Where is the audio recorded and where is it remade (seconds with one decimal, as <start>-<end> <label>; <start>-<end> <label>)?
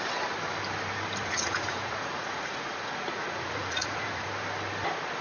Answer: 0.0-1.2 recorded; 1.2-4.3 remade; 4.3-5.2 recorded